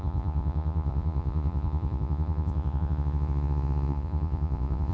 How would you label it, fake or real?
fake